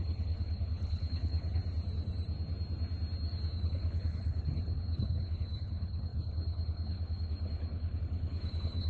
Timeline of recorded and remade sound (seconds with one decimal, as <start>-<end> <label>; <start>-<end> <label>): 0.0-1.6 remade; 1.6-3.6 recorded; 3.6-8.9 remade